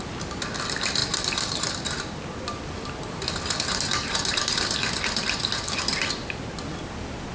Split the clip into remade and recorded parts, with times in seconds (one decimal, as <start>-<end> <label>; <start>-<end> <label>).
0.0-7.3 recorded